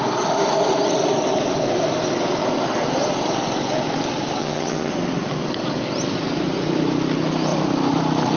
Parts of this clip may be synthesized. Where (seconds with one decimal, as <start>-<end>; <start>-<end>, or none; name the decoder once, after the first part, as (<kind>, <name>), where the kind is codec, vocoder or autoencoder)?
4.4-4.9 (vocoder, HiFi-GAN)